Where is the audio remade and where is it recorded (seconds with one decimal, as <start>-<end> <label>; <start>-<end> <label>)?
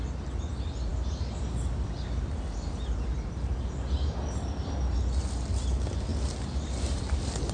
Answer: 0.0-7.5 recorded